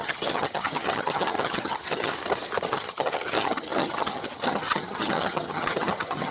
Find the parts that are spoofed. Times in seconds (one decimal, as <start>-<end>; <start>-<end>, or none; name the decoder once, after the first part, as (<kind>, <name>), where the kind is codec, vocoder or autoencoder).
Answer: 0.0-2.1 (vocoder, HiFi-GAN); 2.7-6.3